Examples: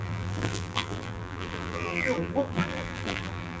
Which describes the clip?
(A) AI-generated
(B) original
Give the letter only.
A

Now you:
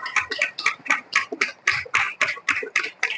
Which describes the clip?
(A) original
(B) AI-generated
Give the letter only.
B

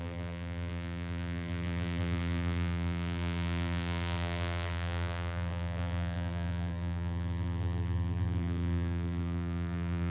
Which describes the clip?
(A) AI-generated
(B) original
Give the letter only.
A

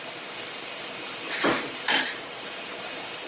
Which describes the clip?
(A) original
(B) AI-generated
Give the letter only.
B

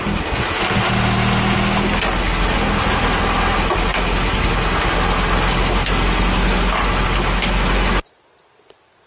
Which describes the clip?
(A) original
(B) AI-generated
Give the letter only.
A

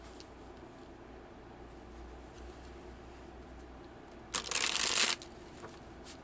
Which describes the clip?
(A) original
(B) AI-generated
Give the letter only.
A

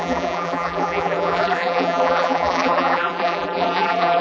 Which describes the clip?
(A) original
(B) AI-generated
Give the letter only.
B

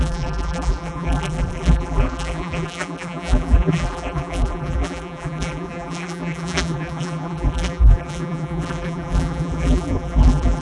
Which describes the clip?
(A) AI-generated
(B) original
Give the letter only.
A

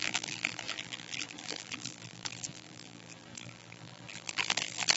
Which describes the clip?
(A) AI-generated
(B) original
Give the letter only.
A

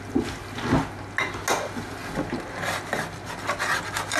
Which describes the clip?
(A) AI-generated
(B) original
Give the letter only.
B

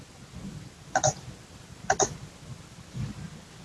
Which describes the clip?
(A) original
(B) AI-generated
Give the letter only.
A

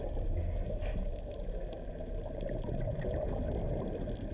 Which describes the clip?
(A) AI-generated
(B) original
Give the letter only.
B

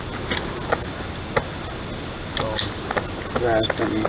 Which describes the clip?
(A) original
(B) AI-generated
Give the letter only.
A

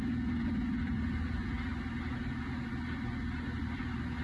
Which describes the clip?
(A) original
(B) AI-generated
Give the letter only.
B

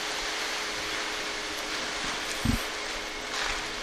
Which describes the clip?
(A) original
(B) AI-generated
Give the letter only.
A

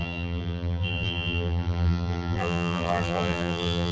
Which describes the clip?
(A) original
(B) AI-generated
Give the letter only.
B